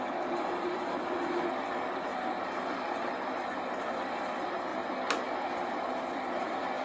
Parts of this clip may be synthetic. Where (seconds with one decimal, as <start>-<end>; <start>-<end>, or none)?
0.0-4.7; 5.9-6.8